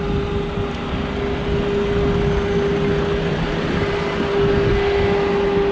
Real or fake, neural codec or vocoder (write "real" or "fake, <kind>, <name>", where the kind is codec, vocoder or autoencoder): real